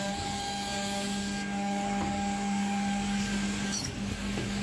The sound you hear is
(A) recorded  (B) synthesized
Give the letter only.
B